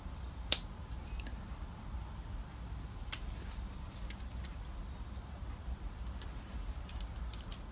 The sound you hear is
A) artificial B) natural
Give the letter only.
B